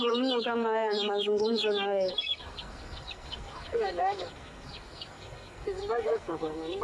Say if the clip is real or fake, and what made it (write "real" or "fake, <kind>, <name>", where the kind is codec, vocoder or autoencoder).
fake, codec, SNAC